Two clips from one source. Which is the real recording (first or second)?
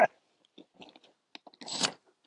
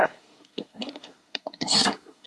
first